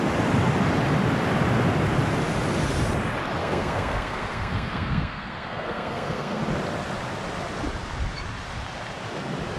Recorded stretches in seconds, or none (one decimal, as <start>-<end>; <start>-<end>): 0.0-3.4; 6.4-9.6